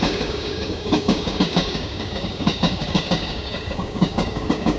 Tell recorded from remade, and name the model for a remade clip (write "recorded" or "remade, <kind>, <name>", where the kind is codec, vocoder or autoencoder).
remade, codec, DAC